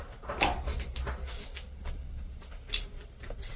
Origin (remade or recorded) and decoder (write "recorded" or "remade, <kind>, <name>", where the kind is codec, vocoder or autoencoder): recorded